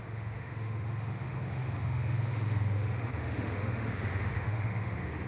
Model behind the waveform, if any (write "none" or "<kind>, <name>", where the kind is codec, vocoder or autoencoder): autoencoder, DAC-VAE